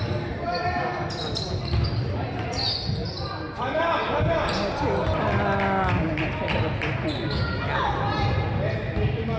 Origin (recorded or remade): recorded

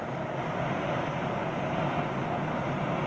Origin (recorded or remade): recorded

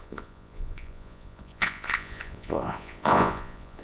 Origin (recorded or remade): remade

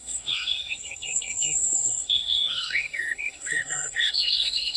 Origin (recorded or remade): remade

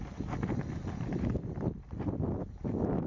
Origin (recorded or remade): recorded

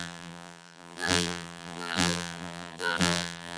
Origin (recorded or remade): remade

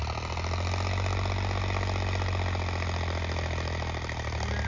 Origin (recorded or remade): recorded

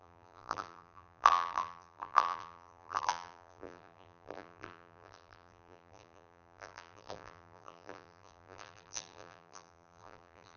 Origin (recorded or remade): remade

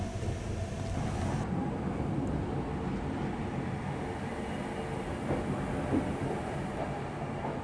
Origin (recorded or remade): recorded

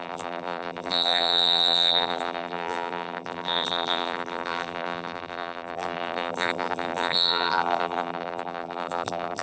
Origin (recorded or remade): remade